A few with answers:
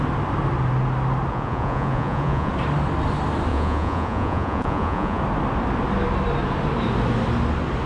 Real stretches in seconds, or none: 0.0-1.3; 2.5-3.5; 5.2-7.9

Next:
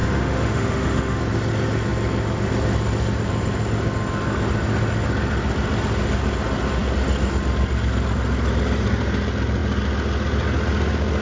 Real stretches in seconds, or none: 1.2-11.2

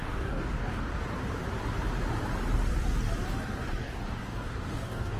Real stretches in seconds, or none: 0.9-3.8

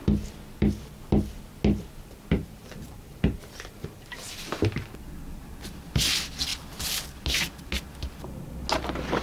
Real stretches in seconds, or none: 0.0-2.4; 4.6-9.2